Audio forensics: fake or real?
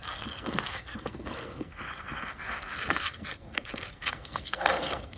fake